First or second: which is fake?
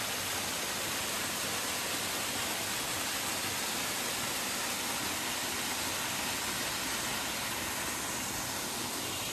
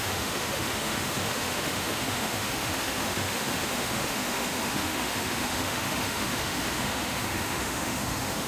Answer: second